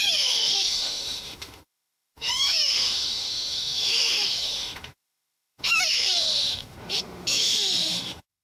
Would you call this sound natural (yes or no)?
no